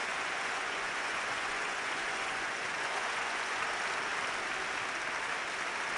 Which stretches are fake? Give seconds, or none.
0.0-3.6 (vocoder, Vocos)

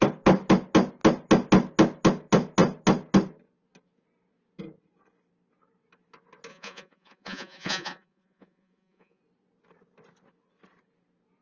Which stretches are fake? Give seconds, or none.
6.5-9.2 (vocoder, Vocos)

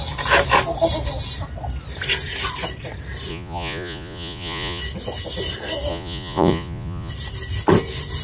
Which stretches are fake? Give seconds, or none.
3.3-4.8 (vocoder, Vocos); 5.9-7.1

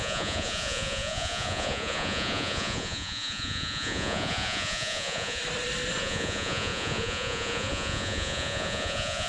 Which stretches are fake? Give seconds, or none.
0.0-5.4 (vocoder, Vocos); 6.0-9.3

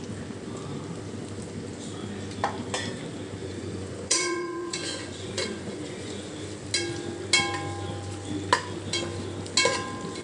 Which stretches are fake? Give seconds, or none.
3.4-6.3 (vocoder, Vocos)